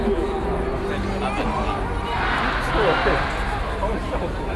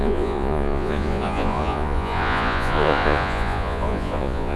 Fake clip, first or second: second